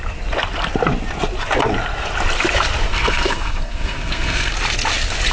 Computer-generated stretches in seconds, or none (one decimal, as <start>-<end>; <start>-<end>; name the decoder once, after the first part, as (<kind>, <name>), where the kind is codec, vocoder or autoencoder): 2.9-4.5 (codec, SNAC)